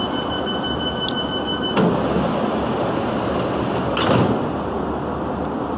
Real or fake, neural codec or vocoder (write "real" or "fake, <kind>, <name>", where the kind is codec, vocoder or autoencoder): real